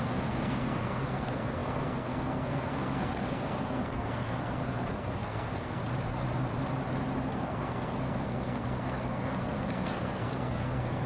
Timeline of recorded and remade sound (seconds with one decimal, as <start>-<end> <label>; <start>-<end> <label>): 0.0-5.8 remade; 5.8-7.3 recorded; 7.3-11.1 remade